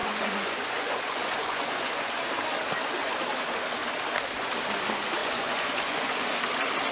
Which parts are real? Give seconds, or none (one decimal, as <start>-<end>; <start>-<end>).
2.2-5.2; 6.3-6.9